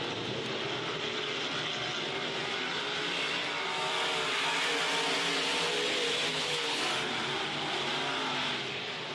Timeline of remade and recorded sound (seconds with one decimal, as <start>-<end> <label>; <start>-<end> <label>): 0.0-6.3 recorded; 6.3-6.8 remade; 6.8-9.1 recorded